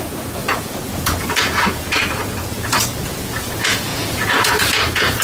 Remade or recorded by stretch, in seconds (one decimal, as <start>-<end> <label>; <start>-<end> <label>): 0.0-5.2 remade